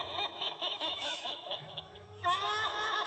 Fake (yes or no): yes